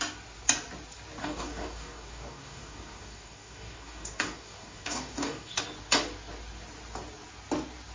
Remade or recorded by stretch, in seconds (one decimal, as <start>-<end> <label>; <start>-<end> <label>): 0.0-1.2 recorded; 1.2-5.6 remade; 5.6-7.9 recorded